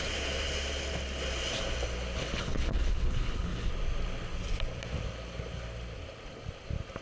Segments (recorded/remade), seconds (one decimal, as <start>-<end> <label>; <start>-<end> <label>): 0.0-2.2 recorded; 2.2-3.7 remade; 3.7-7.0 recorded